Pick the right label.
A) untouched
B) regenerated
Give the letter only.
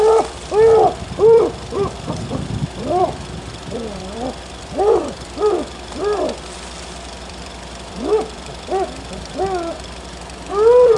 B